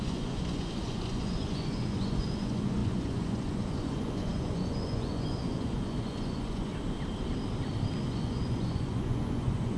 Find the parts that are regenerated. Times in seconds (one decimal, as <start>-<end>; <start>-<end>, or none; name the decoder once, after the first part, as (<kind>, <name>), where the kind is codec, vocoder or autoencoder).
0.0-6.7 (vocoder, Vocos); 8.0-9.8